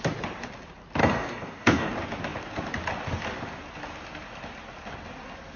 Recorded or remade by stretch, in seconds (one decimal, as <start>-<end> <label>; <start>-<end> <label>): 0.0-1.0 recorded; 1.0-1.9 remade; 1.9-5.6 recorded